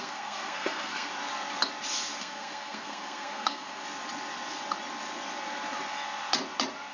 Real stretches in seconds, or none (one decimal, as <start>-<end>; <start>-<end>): 1.1-2.2; 3.8-6.9